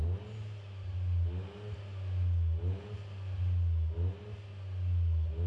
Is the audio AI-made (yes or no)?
no